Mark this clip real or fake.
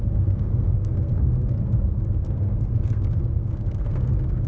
fake